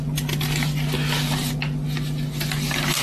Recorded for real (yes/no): yes